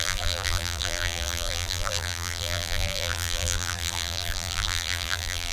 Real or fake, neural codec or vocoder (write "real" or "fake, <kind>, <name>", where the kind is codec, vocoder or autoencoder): fake, vocoder, BigVGAN v2